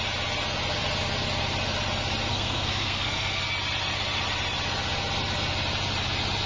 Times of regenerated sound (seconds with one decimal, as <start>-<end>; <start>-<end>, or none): 2.3-3.4